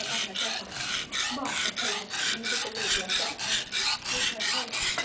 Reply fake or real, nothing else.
real